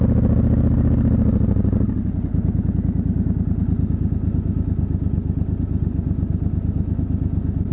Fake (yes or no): no